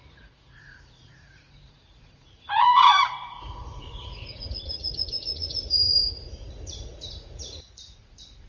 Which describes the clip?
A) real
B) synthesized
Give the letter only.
B